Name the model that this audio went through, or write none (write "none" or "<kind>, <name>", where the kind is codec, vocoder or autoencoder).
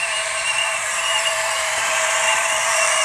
vocoder, BigVGAN v2